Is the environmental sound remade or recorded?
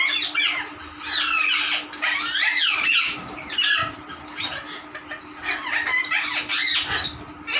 recorded